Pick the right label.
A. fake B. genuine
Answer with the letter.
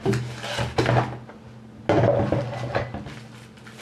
B